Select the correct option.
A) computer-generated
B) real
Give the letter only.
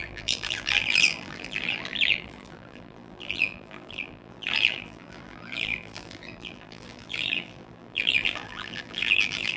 A